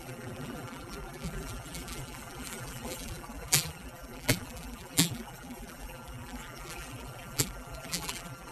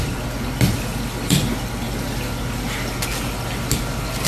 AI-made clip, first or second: first